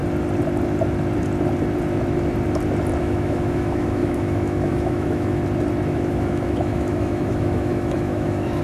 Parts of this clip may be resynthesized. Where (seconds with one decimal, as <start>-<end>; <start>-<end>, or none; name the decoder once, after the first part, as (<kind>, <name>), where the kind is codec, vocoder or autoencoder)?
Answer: 3.0-5.4 (autoencoder, DAC-VAE); 5.9-8.6